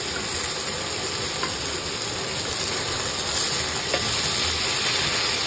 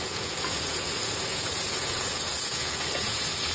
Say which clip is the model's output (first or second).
second